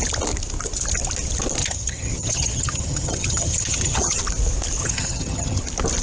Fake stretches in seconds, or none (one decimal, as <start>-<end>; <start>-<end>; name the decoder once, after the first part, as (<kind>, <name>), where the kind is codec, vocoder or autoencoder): 1.6-4.2 (vocoder, HiFi-GAN); 4.8-5.6